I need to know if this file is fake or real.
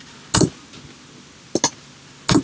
real